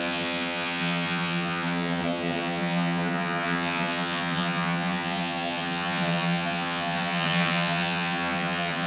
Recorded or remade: remade